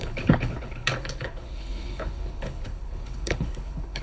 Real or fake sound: fake